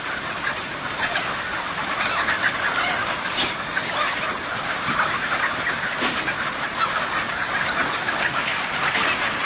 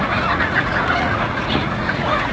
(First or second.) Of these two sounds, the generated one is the second